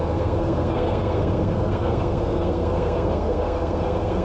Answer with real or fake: fake